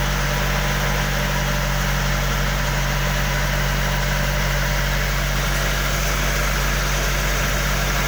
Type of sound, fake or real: real